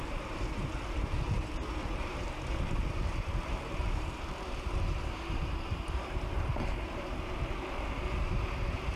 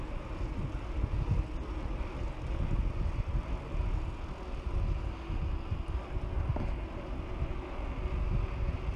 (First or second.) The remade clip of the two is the first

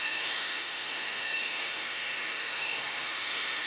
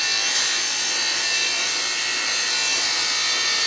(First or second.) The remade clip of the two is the first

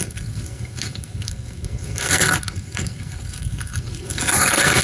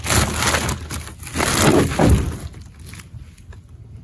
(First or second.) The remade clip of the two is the first